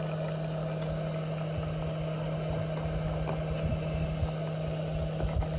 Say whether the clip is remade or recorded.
recorded